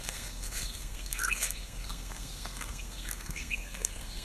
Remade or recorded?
remade